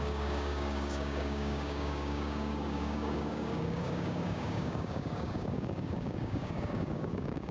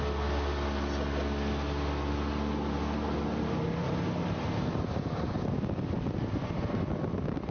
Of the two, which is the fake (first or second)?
first